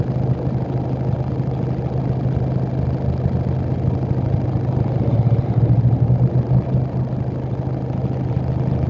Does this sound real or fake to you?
real